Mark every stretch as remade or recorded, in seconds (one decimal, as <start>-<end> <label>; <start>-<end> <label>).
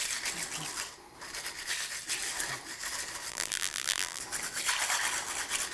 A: 0.0-3.3 recorded; 3.3-4.2 remade; 4.2-5.7 recorded